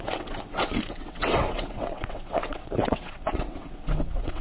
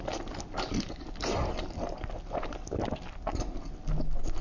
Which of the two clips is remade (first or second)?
first